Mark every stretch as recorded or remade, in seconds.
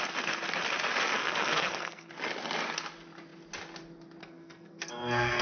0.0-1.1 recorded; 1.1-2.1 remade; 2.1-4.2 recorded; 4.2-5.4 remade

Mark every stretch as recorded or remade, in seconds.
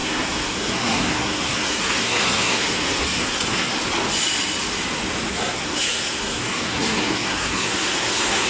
0.0-3.8 remade; 3.8-5.3 recorded; 5.3-8.5 remade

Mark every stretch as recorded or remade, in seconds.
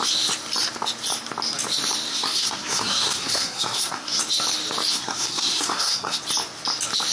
0.0-2.1 recorded; 2.1-4.2 remade; 4.2-4.9 recorded; 4.9-6.2 remade; 6.2-7.1 recorded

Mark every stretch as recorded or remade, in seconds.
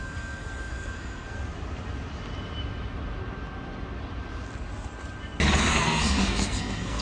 0.0-1.4 remade; 1.4-5.6 recorded; 5.6-7.0 remade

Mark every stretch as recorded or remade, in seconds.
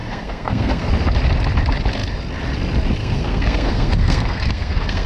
0.0-0.9 remade; 0.9-3.0 recorded; 3.0-5.1 remade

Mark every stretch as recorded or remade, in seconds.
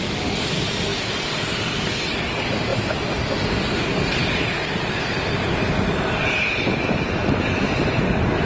0.0-8.5 recorded